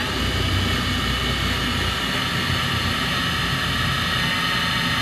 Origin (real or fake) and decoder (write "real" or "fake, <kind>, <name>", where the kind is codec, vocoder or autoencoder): real